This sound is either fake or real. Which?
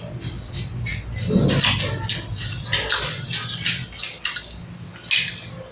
real